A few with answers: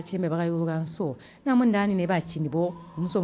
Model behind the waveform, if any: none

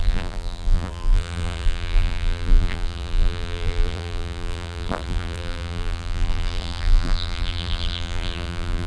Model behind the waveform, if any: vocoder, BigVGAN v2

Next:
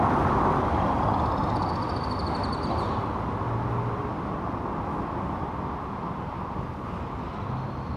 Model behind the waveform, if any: none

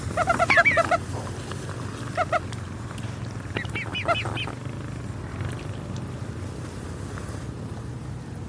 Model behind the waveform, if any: none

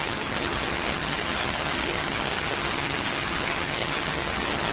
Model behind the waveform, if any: vocoder, HiFi-GAN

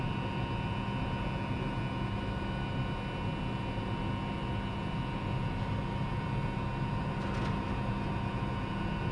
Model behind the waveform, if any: none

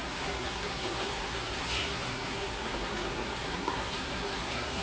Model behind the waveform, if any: codec, SNAC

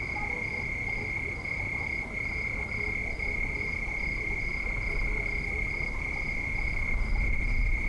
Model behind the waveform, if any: none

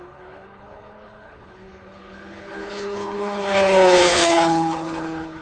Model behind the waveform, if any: codec, HILCodec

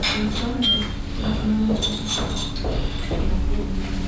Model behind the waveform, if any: none